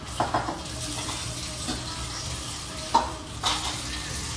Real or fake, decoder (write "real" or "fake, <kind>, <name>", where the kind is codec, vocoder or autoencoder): real